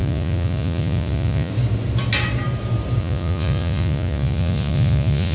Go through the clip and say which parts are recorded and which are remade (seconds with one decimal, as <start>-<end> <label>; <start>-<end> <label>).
0.0-1.5 remade; 1.5-3.0 recorded; 3.0-5.3 remade